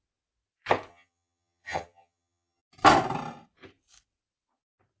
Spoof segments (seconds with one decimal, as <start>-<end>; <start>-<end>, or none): 0.9-2.6